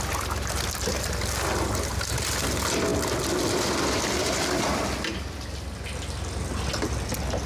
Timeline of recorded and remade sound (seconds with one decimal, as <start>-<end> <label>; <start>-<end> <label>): 0.0-7.5 recorded

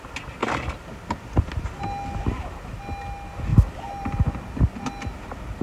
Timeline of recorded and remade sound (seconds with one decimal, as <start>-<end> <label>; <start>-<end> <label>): 0.0-3.5 recorded; 3.5-4.2 remade; 4.2-5.6 recorded

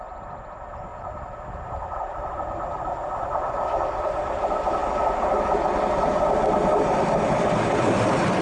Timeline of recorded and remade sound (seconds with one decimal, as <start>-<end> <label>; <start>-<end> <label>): 0.0-0.9 remade; 0.9-1.8 recorded; 1.8-3.0 remade; 3.0-4.0 recorded; 4.0-4.8 remade; 4.8-7.8 recorded; 7.8-8.4 remade

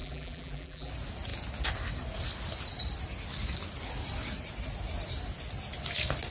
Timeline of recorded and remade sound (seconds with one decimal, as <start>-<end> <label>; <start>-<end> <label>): 0.0-0.9 remade; 0.9-6.3 recorded

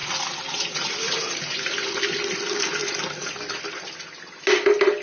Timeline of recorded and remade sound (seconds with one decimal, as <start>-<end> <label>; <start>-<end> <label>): 0.0-5.0 recorded

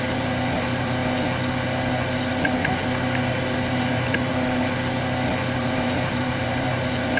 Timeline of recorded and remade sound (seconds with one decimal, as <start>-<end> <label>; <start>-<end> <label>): 0.0-1.0 remade; 1.0-3.8 recorded; 3.8-4.3 remade; 4.3-5.6 recorded; 5.6-7.2 remade

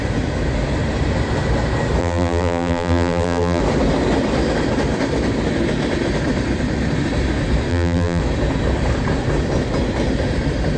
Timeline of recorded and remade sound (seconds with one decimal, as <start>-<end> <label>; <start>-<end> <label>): 0.0-2.0 recorded; 2.0-3.6 remade; 3.6-7.7 recorded; 7.7-8.2 remade; 8.2-10.8 recorded

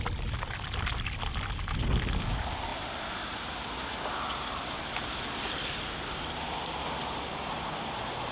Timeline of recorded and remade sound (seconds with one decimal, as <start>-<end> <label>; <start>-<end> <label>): 0.0-2.7 recorded; 2.7-3.8 remade; 3.8-8.3 recorded